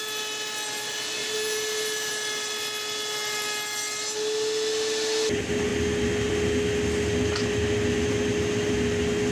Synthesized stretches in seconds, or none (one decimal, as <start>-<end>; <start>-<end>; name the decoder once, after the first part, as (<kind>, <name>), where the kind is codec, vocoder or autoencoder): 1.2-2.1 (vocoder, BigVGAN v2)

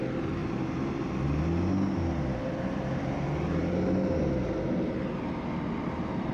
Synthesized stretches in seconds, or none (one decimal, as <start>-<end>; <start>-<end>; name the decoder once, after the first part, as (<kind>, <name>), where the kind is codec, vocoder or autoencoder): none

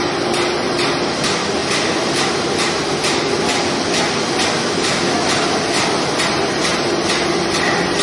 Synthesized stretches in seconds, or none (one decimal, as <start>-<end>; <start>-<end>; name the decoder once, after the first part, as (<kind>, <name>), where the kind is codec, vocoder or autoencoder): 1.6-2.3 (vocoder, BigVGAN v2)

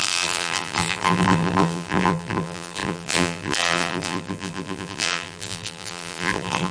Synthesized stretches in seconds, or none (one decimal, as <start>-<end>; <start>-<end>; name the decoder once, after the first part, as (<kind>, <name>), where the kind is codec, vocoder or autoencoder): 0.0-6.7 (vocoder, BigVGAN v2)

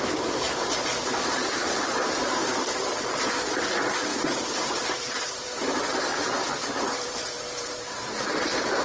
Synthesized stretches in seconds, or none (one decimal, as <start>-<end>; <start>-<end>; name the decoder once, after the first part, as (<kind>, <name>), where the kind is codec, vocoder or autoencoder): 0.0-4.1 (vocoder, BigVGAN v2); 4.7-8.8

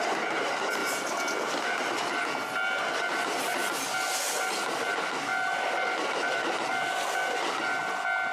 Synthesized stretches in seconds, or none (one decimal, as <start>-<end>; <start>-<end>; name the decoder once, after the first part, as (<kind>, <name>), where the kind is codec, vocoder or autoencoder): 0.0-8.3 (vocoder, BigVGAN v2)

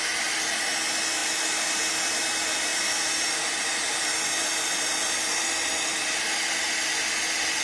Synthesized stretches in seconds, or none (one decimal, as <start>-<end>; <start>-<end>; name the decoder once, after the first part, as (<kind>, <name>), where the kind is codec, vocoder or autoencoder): 2.7-6.7 (vocoder, BigVGAN v2)